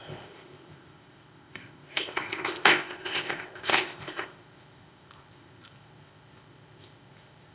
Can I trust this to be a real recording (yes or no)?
no